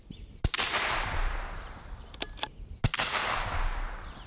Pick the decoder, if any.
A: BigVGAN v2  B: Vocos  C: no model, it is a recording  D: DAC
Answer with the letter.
C